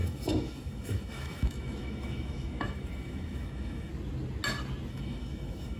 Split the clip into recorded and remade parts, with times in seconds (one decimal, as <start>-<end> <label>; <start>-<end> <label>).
0.0-3.9 remade; 3.9-4.9 recorded; 4.9-5.8 remade